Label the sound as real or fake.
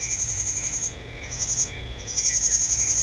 real